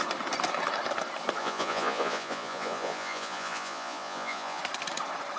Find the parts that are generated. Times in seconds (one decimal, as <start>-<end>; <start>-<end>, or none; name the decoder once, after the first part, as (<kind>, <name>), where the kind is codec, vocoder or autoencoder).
1.4-4.6 (vocoder, Vocos)